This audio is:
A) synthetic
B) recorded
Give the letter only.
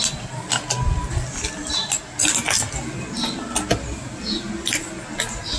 B